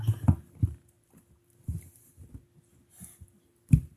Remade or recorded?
recorded